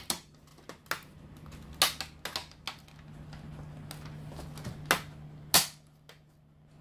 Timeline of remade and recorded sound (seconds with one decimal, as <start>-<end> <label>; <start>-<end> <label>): 0.0-6.8 recorded